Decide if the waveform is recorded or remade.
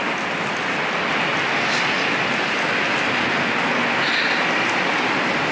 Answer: recorded